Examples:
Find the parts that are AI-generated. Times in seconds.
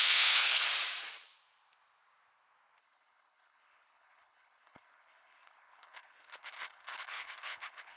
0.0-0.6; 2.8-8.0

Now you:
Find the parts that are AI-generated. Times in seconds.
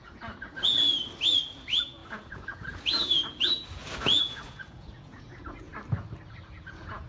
0.0-0.9; 1.5-5.7; 6.3-7.1